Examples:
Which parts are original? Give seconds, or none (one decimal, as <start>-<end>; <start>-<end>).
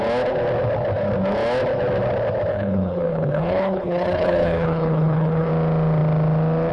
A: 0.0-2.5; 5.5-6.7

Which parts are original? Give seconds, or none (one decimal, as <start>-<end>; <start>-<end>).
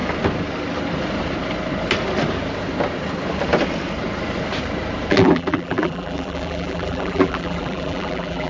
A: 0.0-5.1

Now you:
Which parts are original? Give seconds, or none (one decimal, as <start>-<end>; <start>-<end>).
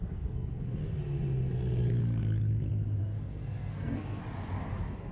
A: 0.8-3.0; 4.2-5.1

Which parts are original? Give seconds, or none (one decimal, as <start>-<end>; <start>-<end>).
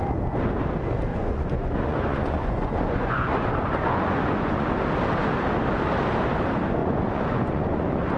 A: 0.0-1.1; 4.7-6.8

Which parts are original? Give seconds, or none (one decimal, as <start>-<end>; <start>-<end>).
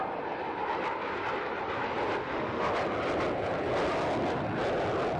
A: 0.0-2.2; 2.7-5.2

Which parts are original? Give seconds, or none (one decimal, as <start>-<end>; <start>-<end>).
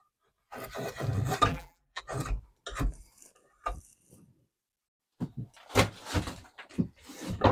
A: 0.0-1.5; 2.0-7.5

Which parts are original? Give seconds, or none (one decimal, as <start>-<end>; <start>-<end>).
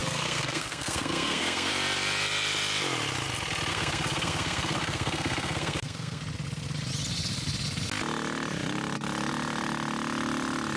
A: 1.7-3.7; 6.2-10.8